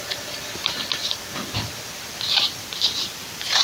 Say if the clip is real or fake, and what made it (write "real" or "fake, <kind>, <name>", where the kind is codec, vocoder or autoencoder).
fake, vocoder, BigVGAN v2